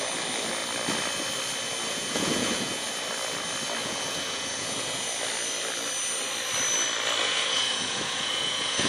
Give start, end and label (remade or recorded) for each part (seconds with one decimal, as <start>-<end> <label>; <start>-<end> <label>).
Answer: 0.0-1.9 recorded; 1.9-2.9 remade; 2.9-3.8 recorded; 3.8-5.1 remade; 5.1-7.2 recorded; 7.2-8.9 remade